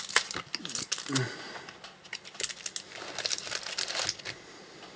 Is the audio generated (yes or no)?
no